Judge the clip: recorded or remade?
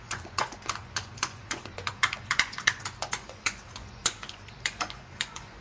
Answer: remade